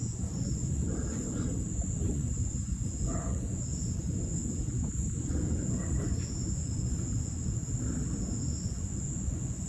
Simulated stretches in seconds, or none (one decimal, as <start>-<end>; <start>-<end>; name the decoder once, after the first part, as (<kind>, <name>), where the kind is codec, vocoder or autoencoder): 0.0-1.5 (vocoder, Vocos); 2.1-7.6; 8.4-9.7